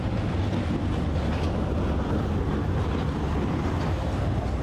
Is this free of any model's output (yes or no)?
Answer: yes